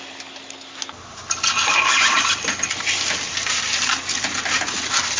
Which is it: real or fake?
real